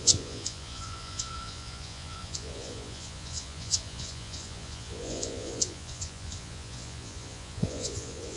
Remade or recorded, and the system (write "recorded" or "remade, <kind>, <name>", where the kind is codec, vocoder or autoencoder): remade, vocoder, Vocos